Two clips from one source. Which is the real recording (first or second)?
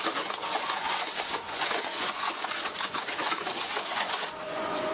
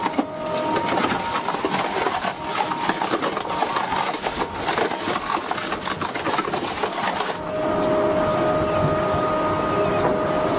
second